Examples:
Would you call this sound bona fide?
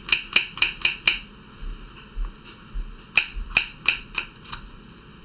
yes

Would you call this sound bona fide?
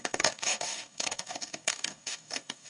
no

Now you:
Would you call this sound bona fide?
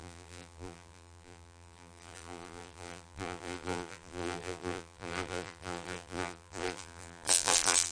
no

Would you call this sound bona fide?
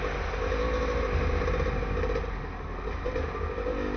yes